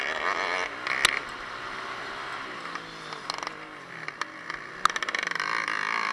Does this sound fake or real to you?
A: real